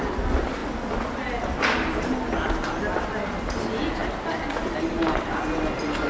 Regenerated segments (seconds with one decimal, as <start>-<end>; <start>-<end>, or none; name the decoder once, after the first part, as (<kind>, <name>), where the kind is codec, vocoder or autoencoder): none